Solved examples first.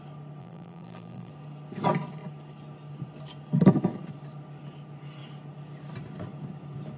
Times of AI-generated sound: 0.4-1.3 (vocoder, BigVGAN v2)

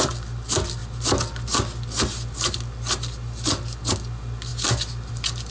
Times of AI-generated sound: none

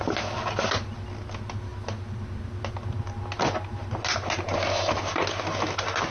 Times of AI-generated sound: none